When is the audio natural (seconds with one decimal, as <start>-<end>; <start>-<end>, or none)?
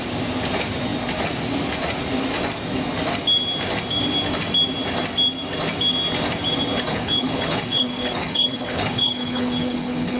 0.0-6.9